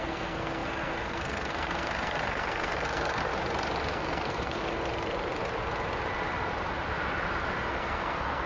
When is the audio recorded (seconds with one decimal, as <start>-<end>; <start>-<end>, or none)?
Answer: 3.2-3.9; 4.6-7.7